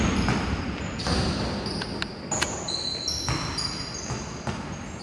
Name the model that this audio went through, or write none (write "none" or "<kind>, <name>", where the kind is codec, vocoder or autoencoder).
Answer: none